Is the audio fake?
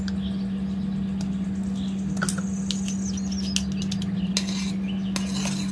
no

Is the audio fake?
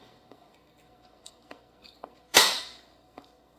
yes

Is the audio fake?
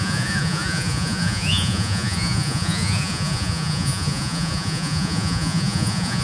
yes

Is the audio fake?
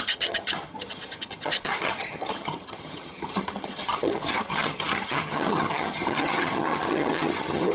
yes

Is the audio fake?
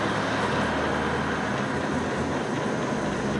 no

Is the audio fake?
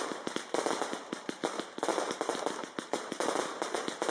no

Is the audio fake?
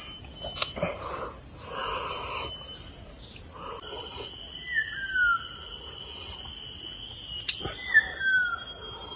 no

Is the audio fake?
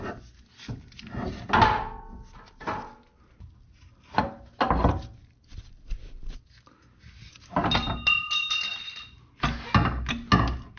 no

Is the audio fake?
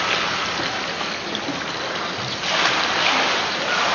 no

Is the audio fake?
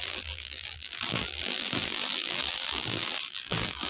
yes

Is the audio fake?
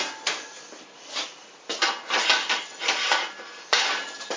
no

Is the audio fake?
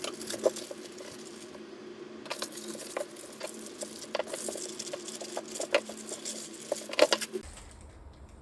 no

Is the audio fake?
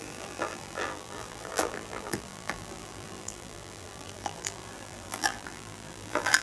yes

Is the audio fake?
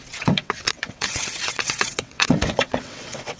yes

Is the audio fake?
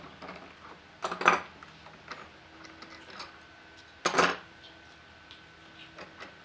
no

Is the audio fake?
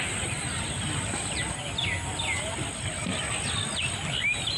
no